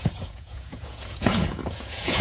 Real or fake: fake